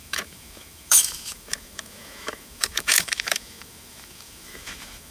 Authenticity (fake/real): fake